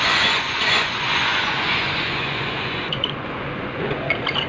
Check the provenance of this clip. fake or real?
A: fake